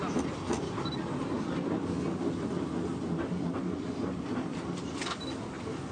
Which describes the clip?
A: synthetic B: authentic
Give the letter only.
B